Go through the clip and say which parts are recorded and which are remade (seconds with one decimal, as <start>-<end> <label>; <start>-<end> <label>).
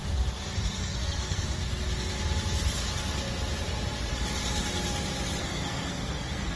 0.0-0.8 recorded; 0.8-1.4 remade; 1.4-5.4 recorded; 5.4-6.6 remade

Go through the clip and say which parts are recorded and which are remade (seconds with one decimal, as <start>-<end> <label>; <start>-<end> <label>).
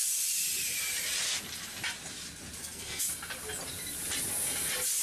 0.0-2.6 recorded; 2.6-3.1 remade; 3.1-5.0 recorded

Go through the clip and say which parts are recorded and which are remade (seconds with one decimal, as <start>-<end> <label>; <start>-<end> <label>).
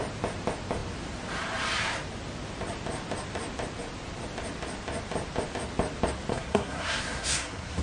0.0-6.3 recorded; 6.3-7.8 remade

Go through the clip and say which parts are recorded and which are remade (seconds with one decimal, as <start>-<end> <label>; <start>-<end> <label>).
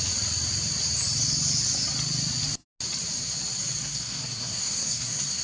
0.0-3.8 recorded; 3.8-5.4 remade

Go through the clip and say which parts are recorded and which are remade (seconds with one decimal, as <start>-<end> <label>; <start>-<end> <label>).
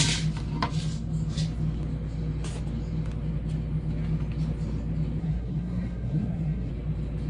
0.0-5.2 recorded; 5.2-6.7 remade; 6.7-7.3 recorded